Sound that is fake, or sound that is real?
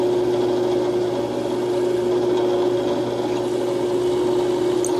real